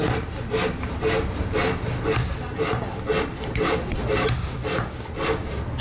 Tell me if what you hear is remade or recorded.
recorded